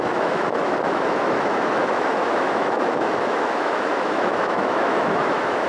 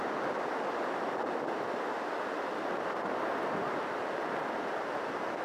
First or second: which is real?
second